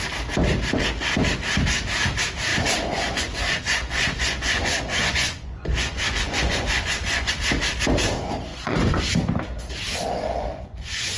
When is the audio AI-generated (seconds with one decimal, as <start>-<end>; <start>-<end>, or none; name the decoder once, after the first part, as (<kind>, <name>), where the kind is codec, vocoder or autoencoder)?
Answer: 2.5-7.3 (vocoder, Vocos); 8.5-9.0; 10.0-11.2